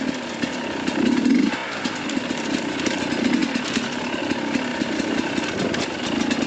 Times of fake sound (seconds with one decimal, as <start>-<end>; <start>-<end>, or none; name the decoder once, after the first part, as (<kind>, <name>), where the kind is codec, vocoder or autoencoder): 1.6-2.2 (vocoder, BigVGAN v2); 3.4-4.2; 4.7-5.3